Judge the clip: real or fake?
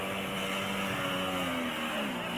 real